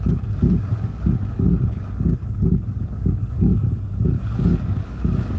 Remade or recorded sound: remade